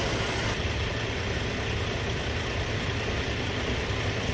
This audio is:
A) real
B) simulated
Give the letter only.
A